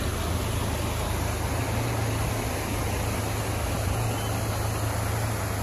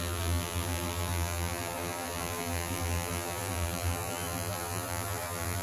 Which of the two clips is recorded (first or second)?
first